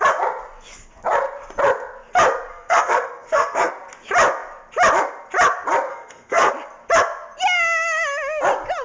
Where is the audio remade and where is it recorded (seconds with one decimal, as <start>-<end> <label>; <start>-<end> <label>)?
0.0-2.5 recorded; 2.5-3.7 remade; 3.7-5.9 recorded; 5.9-6.5 remade; 6.5-8.8 recorded